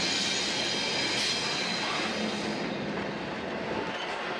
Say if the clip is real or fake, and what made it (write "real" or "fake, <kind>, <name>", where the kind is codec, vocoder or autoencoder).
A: real